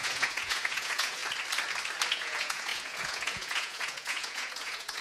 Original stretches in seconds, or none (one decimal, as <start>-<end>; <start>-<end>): 1.2-2.1